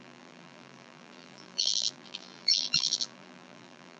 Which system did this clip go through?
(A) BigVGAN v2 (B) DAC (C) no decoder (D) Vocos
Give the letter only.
A